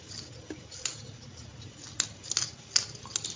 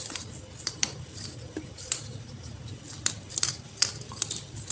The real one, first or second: first